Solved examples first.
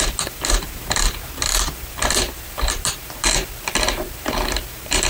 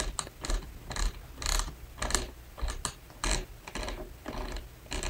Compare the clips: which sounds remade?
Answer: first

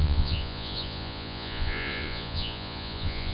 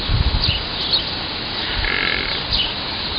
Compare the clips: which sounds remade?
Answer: first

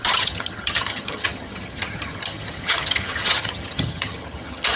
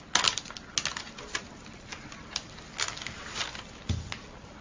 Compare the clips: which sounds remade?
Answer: first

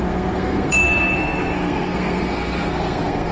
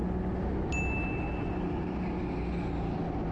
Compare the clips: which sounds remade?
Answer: first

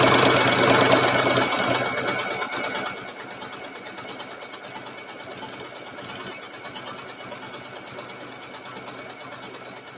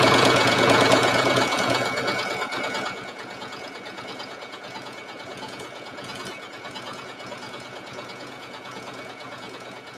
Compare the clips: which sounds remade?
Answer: second